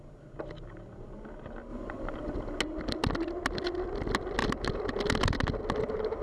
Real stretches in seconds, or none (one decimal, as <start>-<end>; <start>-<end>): 0.0-4.4; 4.9-6.2